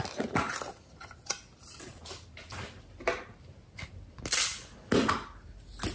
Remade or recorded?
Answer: recorded